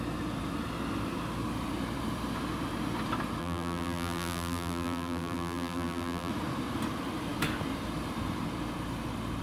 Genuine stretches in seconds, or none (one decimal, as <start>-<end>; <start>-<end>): 0.0-3.4; 6.3-9.4